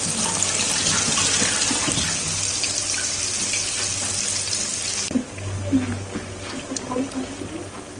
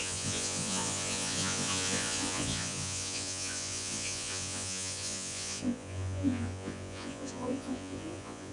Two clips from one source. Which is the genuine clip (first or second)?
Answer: first